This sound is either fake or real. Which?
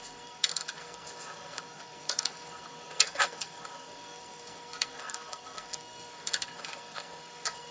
fake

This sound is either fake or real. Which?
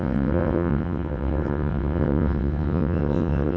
fake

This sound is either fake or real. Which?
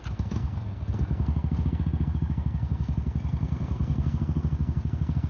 fake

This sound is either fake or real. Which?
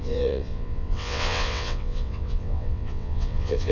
fake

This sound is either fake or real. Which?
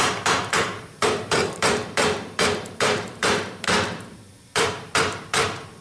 fake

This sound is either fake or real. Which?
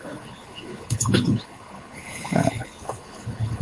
fake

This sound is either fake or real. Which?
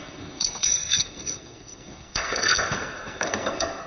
fake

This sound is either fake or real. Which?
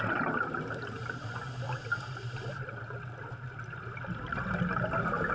real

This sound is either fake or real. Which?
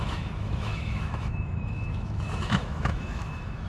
fake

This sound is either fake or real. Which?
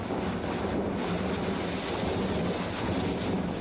real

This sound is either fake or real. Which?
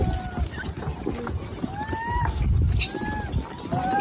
real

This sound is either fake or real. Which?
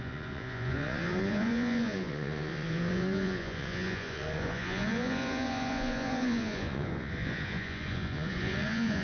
fake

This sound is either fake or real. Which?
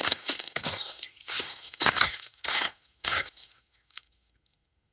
fake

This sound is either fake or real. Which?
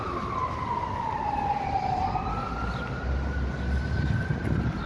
real